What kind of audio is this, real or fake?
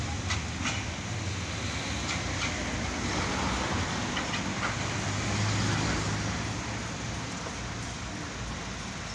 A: real